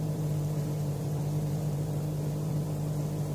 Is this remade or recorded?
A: remade